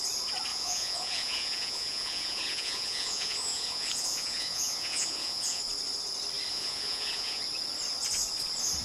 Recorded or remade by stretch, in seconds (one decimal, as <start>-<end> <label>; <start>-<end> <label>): 0.0-0.5 recorded; 0.5-5.6 remade; 5.6-6.5 recorded; 6.5-7.4 remade; 7.4-8.8 recorded